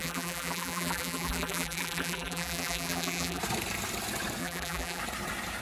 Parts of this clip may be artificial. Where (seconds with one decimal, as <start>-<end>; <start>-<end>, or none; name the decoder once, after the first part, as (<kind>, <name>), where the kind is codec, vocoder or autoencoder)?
0.0-3.4 (vocoder, BigVGAN v2); 4.4-5.0